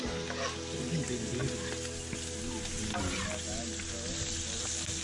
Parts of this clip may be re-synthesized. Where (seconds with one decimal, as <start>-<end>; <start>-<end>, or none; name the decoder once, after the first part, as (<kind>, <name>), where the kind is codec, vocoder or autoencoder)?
none